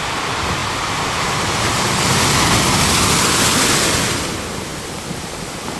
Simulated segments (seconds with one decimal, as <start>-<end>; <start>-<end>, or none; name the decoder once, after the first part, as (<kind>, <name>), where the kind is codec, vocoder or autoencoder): none